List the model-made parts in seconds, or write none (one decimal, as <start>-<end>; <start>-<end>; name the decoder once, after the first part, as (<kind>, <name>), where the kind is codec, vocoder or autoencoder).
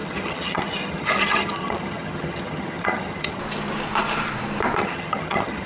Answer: 0.0-3.4 (vocoder, HiFi-GAN); 4.8-5.7